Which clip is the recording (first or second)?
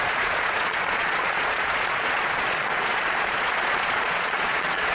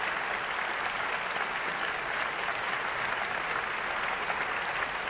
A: second